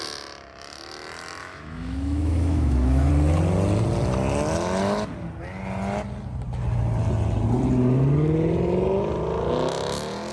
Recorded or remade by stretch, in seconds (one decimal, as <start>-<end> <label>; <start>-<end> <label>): 0.0-1.4 recorded; 1.4-3.1 remade; 3.1-10.3 recorded